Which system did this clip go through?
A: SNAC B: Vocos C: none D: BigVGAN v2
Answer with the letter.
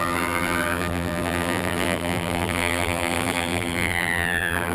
D